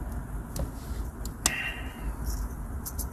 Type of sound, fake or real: real